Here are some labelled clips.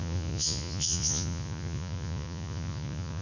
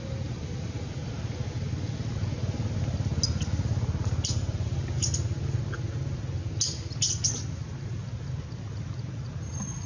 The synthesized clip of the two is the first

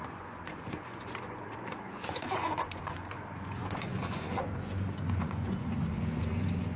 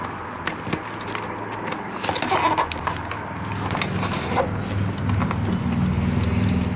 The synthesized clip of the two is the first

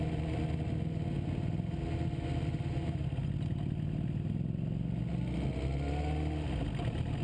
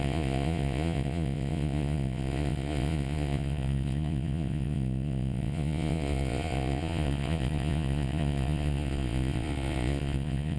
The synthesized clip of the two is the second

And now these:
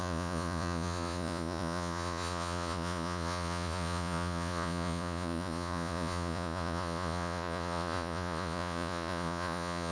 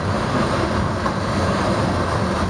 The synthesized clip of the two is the first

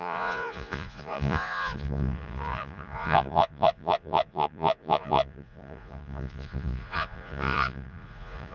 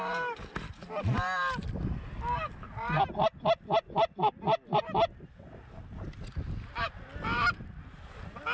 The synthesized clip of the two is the first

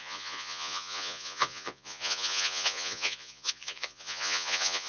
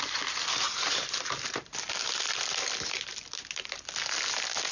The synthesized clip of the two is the first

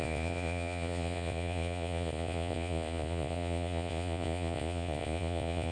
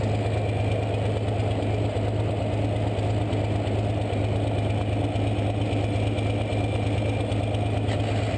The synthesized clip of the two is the first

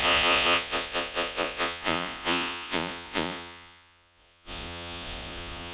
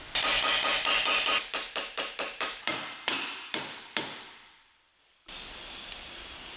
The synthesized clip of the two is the first